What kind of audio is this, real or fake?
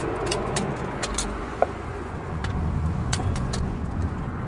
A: fake